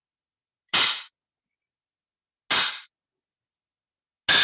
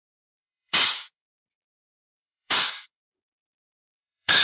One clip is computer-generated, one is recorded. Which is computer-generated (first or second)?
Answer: second